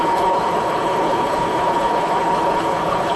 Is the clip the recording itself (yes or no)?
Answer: no